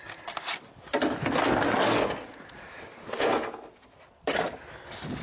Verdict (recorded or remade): recorded